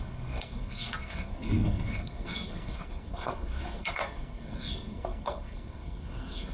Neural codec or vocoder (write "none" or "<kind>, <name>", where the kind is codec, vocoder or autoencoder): codec, SNAC